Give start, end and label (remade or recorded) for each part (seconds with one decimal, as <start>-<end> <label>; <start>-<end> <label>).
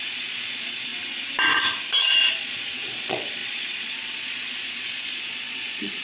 0.0-0.9 remade; 0.9-2.3 recorded; 2.3-6.0 remade